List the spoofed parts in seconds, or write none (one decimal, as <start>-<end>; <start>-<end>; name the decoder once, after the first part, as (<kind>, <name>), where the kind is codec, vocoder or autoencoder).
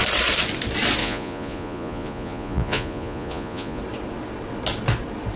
1.0-3.8 (vocoder, Vocos)